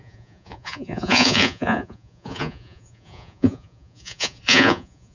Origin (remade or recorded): remade